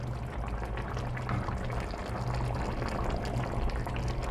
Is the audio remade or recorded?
recorded